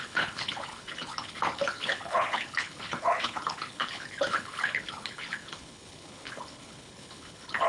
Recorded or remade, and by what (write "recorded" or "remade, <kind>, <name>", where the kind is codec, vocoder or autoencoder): remade, codec, HILCodec